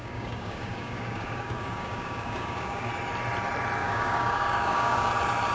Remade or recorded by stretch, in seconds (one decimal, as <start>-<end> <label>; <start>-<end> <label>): 0.0-2.9 remade; 2.9-3.8 recorded; 3.8-5.1 remade; 5.1-5.5 recorded